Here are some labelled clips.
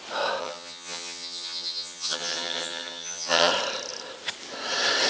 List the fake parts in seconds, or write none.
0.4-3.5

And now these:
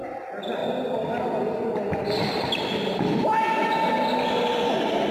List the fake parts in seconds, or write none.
none